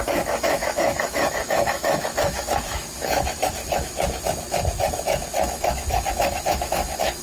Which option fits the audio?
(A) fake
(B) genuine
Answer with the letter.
A